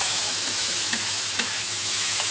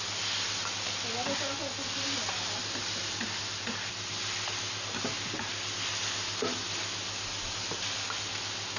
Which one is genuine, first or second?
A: second